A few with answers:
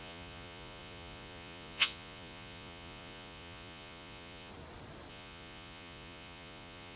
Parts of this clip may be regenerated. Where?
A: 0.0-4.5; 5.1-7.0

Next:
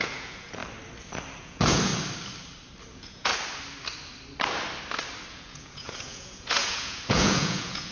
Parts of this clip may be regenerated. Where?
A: 0.0-0.6; 1.4-1.9; 2.9-3.3; 5.3-7.9

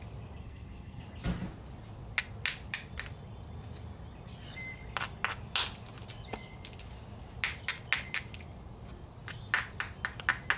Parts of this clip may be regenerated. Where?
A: 0.4-1.0

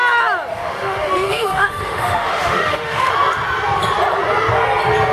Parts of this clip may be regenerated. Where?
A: 0.5-3.1

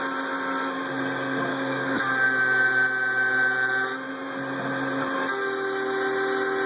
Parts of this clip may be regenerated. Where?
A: 1.5-2.0

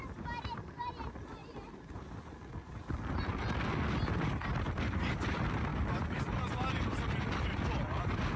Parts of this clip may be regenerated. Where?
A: none

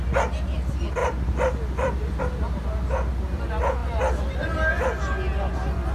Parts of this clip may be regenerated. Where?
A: none

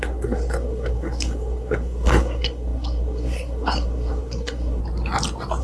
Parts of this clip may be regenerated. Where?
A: 0.0-4.8